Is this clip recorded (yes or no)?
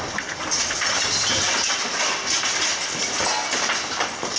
yes